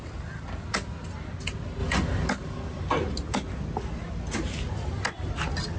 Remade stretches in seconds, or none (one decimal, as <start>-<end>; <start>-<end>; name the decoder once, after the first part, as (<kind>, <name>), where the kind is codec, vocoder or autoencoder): none